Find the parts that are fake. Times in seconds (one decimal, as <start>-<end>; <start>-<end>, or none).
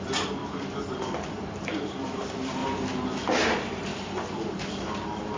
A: 0.0-2.6; 3.3-3.9; 4.6-5.4